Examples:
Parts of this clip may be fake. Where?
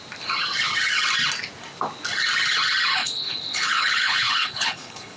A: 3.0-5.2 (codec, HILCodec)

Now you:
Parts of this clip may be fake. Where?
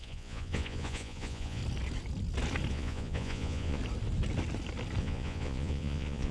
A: 0.0-1.6 (vocoder, Vocos); 2.7-3.8; 5.0-6.3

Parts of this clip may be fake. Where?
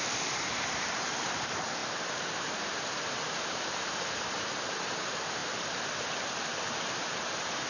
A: 0.0-7.7 (vocoder, BigVGAN v2)